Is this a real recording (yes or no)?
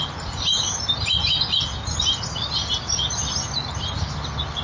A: yes